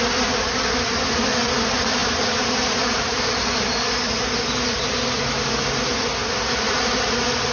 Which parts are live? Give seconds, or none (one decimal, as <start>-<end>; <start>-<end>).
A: 0.0-2.0; 3.3-7.5